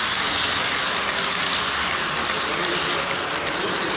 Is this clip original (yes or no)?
yes